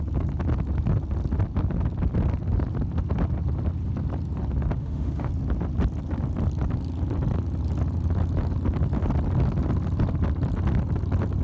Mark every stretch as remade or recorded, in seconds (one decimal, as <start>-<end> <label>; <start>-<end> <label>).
0.0-4.8 recorded; 4.8-5.3 remade; 5.3-11.4 recorded